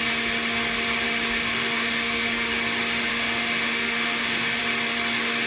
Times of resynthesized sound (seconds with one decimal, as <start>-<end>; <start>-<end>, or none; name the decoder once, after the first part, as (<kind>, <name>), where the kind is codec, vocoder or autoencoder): 1.4-2.5 (autoencoder, DAC-VAE); 3.1-4.6